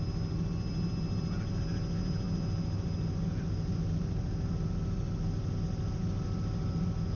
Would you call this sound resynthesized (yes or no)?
no